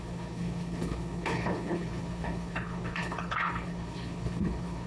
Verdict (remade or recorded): remade